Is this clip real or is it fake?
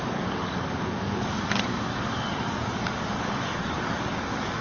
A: fake